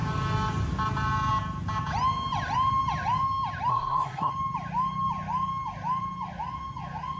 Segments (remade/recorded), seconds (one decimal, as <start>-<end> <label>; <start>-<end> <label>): 0.0-3.7 recorded; 3.7-4.3 remade; 4.3-7.2 recorded